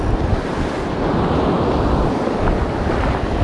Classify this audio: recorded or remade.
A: recorded